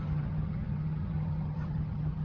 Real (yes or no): no